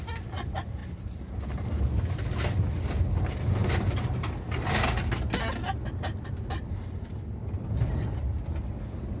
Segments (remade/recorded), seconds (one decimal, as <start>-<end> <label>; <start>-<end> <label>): 0.0-9.2 recorded